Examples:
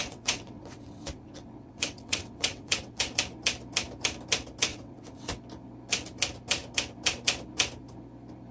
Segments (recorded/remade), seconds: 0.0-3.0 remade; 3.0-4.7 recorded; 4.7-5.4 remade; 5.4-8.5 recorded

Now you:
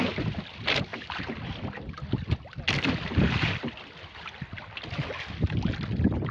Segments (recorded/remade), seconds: 0.0-6.3 recorded

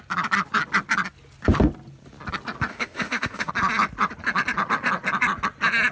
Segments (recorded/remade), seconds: 0.0-2.7 recorded; 2.7-3.5 remade; 3.5-5.9 recorded

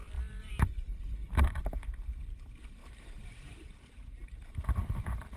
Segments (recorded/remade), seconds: 0.0-1.2 recorded; 1.2-1.7 remade; 1.7-2.8 recorded; 2.8-3.7 remade; 3.7-4.2 recorded; 4.2-4.8 remade; 4.8-5.4 recorded

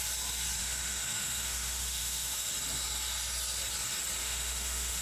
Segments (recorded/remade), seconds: 0.0-0.6 recorded; 0.6-2.5 remade; 2.5-4.2 recorded; 4.2-5.0 remade

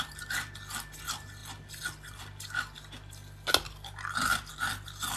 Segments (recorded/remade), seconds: 0.0-5.2 recorded

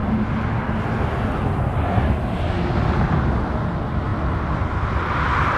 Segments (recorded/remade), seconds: 0.0-5.6 recorded